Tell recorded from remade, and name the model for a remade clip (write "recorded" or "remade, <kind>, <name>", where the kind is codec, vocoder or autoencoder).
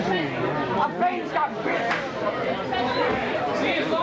recorded